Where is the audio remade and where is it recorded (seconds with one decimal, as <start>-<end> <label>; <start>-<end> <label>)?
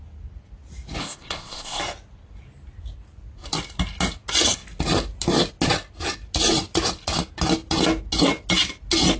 0.0-1.0 recorded; 1.0-1.8 remade; 1.8-9.2 recorded